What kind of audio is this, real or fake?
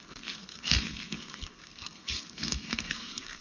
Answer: fake